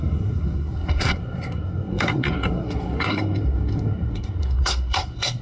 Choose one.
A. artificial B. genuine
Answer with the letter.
A